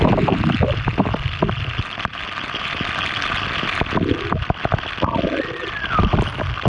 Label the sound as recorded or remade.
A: recorded